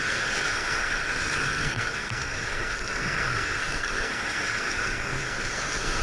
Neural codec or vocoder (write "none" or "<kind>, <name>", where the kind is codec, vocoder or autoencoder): codec, SNAC